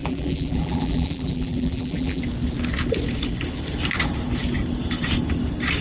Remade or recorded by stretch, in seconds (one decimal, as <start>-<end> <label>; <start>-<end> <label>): 0.0-2.2 remade; 2.2-5.8 recorded